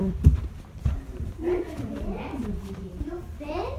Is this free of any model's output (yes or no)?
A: no